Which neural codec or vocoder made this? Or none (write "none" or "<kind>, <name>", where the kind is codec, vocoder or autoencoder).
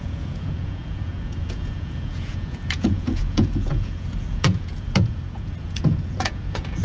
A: vocoder, Vocos